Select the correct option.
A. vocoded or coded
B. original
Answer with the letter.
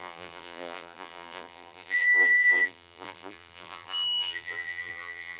A